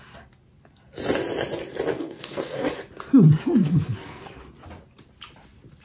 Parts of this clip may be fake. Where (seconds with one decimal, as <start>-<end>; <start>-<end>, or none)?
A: 1.9-2.7; 3.6-4.4